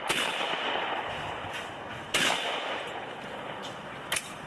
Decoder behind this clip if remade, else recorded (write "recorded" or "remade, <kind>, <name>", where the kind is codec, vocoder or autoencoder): recorded